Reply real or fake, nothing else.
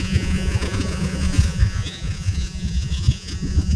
fake